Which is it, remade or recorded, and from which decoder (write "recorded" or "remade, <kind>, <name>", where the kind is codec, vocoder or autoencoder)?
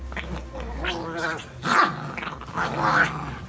recorded